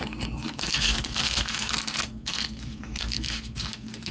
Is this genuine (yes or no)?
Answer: no